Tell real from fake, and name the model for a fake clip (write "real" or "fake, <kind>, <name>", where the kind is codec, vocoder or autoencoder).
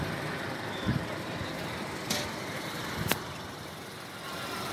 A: fake, vocoder, BigVGAN v2